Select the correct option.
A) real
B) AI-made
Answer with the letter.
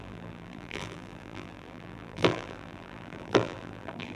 B